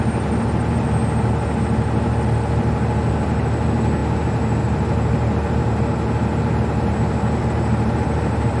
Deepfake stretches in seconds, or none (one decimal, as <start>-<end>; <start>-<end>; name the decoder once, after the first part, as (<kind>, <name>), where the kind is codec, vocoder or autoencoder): none